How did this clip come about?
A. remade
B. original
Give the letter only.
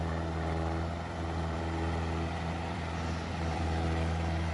A